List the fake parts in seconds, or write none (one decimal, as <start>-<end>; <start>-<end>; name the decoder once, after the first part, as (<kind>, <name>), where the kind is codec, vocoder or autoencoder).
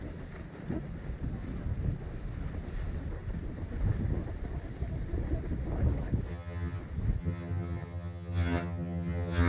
6.3-6.8 (vocoder, HiFi-GAN); 7.2-9.5